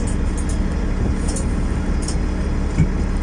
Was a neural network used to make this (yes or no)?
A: no